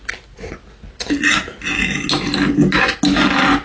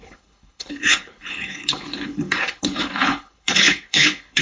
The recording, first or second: first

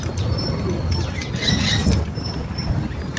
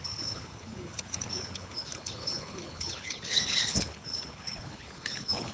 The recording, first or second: first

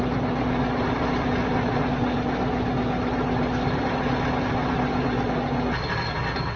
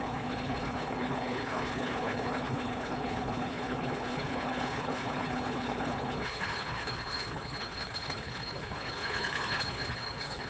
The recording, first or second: first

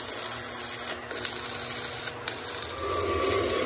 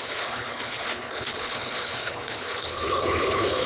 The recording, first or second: first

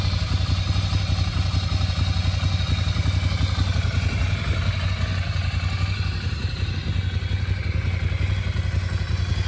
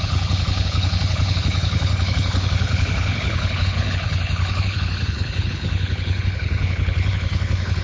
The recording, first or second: first